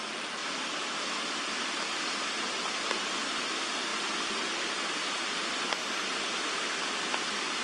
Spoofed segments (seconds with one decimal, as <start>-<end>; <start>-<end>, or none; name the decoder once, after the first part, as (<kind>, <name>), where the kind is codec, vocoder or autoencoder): none